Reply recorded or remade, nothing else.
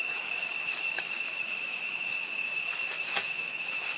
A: remade